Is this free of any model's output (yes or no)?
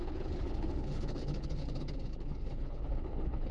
no